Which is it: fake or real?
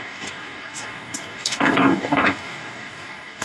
fake